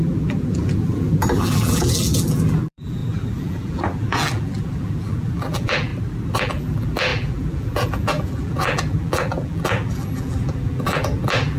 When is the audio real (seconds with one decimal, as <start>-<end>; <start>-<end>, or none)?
5.9-6.4